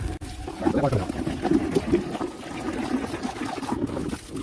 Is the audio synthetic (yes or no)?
no